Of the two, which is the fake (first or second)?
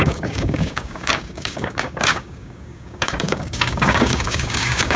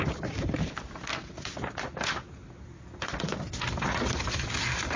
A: first